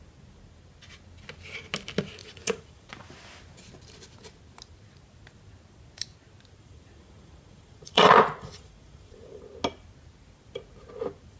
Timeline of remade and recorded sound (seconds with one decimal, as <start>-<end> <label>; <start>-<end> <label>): 0.0-2.2 recorded; 2.2-2.9 remade; 2.9-6.6 recorded; 6.6-9.4 remade; 9.4-11.4 recorded